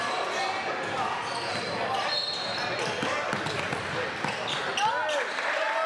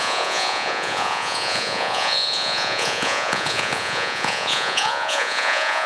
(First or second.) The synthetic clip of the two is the second